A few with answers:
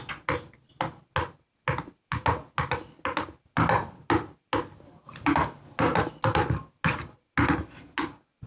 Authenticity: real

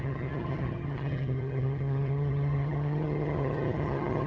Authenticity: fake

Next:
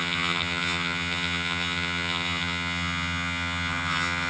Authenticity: fake